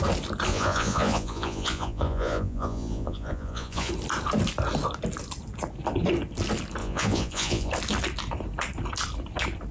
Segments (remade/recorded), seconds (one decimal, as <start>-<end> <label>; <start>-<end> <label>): 0.0-0.5 recorded; 0.5-3.9 remade; 3.9-6.8 recorded; 6.8-7.7 remade; 7.7-9.7 recorded